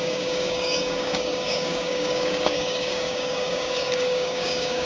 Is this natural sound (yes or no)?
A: no